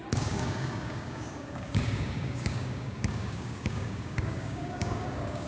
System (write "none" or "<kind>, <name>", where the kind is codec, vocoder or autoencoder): codec, DAC